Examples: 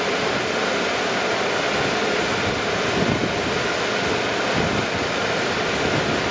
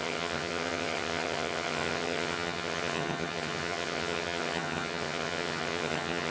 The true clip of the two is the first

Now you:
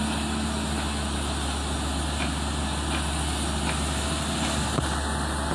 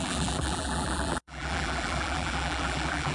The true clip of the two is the first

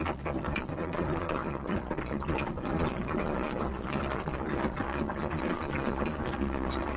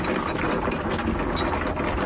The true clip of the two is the second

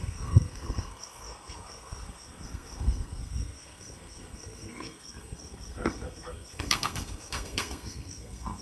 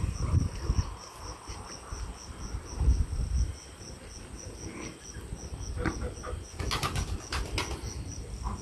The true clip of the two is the second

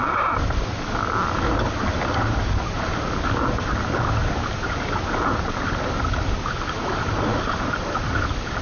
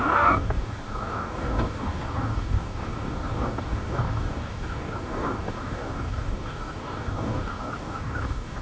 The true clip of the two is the first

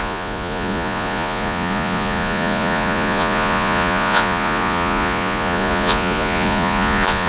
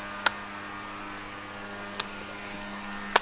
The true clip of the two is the second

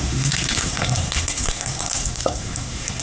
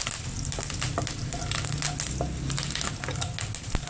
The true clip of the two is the second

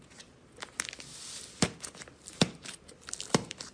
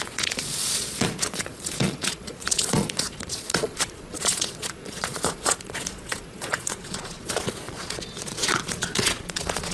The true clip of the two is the first